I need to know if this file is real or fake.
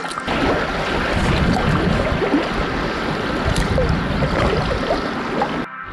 real